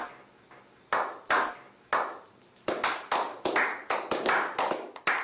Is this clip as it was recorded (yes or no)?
yes